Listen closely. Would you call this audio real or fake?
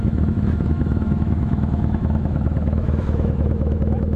fake